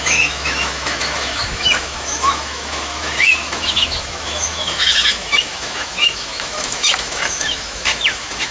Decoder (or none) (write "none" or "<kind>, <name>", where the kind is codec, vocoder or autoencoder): autoencoder, DAC-VAE